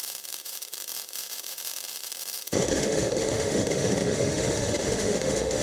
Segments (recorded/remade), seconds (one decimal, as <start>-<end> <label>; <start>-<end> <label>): 0.0-5.6 remade